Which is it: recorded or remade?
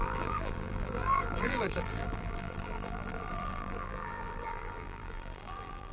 remade